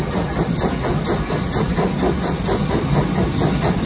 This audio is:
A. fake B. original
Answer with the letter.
B